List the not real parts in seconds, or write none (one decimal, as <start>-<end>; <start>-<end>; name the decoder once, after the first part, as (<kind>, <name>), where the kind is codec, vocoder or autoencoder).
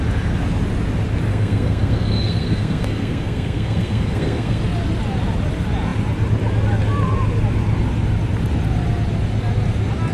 1.3-4.6 (codec, SNAC)